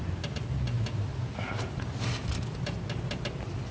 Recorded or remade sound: recorded